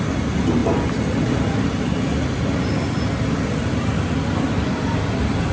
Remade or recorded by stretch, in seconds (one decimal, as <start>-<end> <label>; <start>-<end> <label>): 0.0-5.5 recorded